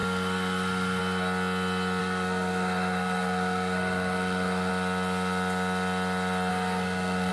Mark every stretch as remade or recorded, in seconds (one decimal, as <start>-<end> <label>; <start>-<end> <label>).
0.0-1.0 remade; 1.0-2.0 recorded; 2.0-4.7 remade; 4.7-6.5 recorded; 6.5-7.3 remade